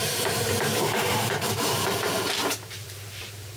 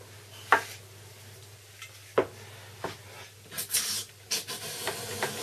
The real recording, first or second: second